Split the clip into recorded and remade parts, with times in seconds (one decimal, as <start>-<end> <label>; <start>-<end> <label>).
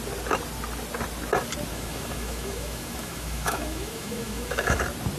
0.0-1.7 recorded; 1.7-4.8 remade; 4.8-5.2 recorded